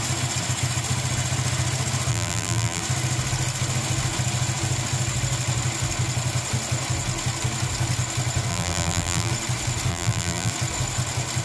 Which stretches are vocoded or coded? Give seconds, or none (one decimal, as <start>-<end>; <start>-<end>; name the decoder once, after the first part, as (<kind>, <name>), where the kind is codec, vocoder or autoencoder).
2.1-2.8 (vocoder, BigVGAN v2); 8.5-9.3; 9.9-10.5